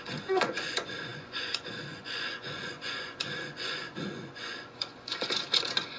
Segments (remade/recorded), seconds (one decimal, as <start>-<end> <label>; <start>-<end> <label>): 0.0-6.0 remade